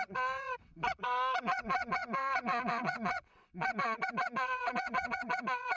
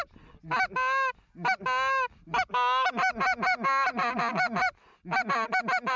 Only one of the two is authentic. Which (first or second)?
second